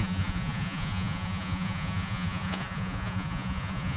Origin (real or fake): fake